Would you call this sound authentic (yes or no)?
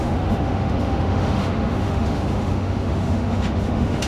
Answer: no